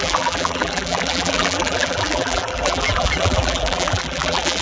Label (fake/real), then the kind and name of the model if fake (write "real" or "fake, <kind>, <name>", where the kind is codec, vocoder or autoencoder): fake, vocoder, BigVGAN v2